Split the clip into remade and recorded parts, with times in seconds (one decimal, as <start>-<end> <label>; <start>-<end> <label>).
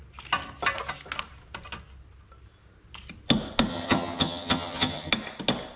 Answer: 0.0-3.7 recorded; 3.7-5.1 remade; 5.1-5.8 recorded